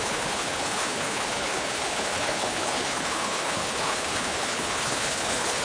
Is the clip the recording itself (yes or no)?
no